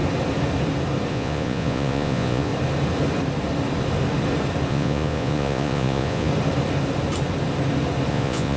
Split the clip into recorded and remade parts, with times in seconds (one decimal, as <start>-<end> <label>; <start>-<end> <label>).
0.0-1.1 recorded; 1.1-2.5 remade; 2.5-4.7 recorded; 4.7-6.3 remade; 6.3-8.1 recorded; 8.1-8.6 remade